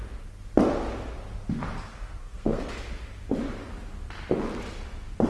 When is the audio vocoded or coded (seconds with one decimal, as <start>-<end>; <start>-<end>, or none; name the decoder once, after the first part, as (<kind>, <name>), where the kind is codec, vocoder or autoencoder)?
1.9-2.7 (codec, SNAC)